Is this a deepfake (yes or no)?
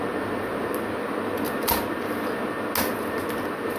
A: no